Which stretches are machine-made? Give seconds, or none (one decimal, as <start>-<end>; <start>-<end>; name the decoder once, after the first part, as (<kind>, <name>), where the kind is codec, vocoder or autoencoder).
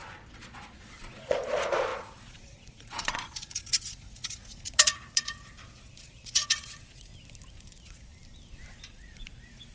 0.0-7.1 (vocoder, Vocos); 7.7-8.1; 8.9-9.7